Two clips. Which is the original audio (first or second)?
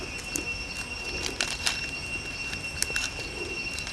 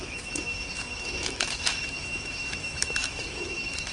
first